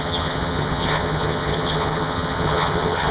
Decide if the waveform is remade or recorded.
remade